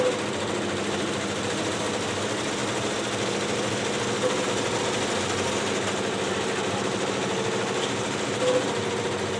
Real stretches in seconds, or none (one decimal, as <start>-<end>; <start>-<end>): 0.0-9.4